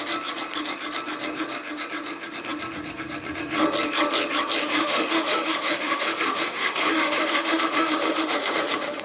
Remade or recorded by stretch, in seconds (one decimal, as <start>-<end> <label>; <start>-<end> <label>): 0.0-4.6 recorded; 4.6-9.0 remade